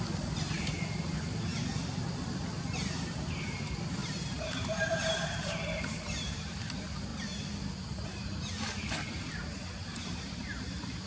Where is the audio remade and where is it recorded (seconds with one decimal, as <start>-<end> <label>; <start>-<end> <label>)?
0.0-1.5 remade; 1.5-2.6 recorded; 2.6-7.1 remade; 7.1-9.4 recorded; 9.4-11.1 remade

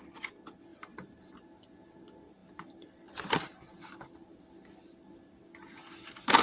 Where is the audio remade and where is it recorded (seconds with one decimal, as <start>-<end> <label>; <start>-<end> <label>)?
0.0-0.7 recorded; 0.7-1.2 remade; 1.2-2.4 recorded; 2.4-5.2 remade; 5.2-6.4 recorded

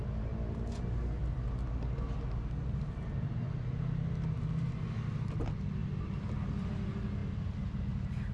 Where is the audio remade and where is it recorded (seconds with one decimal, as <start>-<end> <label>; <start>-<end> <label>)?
0.0-8.3 recorded

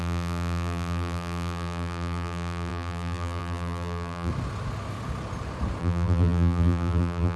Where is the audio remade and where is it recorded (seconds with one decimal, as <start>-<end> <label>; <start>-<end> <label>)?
0.0-4.3 remade; 4.3-5.8 recorded; 5.8-7.4 remade

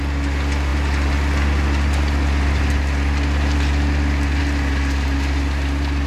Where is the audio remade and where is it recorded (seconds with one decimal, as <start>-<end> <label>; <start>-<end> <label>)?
0.0-6.1 recorded

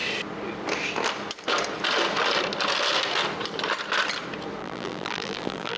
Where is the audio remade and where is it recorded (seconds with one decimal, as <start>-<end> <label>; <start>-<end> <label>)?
0.0-4.6 recorded; 4.6-5.8 remade